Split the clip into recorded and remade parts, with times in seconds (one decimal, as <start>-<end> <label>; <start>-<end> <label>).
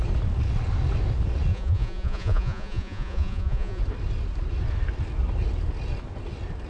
0.0-1.5 recorded; 1.5-3.8 remade; 3.8-6.7 recorded